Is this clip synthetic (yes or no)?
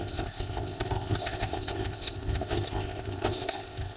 yes